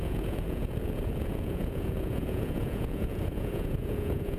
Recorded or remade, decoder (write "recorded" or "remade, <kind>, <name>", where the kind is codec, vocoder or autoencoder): remade, vocoder, Vocos